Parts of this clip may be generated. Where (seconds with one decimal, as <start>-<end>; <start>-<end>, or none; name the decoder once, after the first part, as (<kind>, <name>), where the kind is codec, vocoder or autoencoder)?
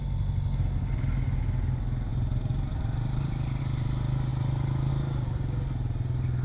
2.1-3.6 (vocoder, BigVGAN v2)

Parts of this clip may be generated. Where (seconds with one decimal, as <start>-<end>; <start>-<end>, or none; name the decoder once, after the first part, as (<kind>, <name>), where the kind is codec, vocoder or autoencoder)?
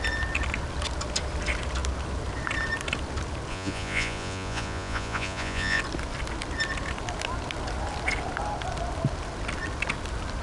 3.5-5.8 (vocoder, Vocos)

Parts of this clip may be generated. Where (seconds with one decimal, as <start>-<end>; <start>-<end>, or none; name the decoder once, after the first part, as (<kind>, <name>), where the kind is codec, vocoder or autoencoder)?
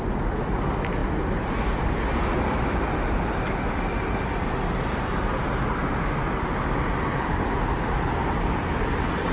none